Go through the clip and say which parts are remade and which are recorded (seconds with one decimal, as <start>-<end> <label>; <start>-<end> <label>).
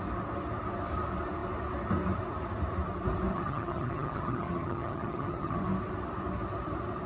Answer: 0.0-3.3 recorded; 3.3-5.6 remade; 5.6-7.1 recorded